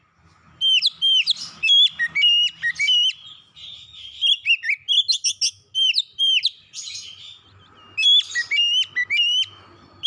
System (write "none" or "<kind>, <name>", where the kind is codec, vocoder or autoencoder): none